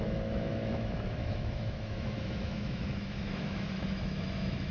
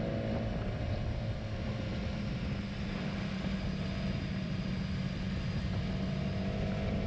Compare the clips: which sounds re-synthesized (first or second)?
first